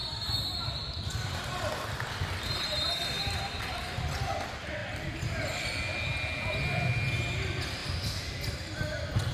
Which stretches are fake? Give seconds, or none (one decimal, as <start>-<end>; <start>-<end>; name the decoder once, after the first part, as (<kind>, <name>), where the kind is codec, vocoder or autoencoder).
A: 4.8-5.5 (vocoder, BigVGAN v2)